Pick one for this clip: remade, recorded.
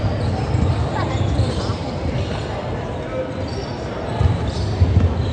recorded